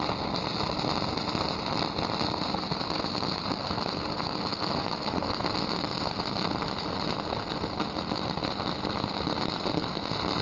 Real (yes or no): yes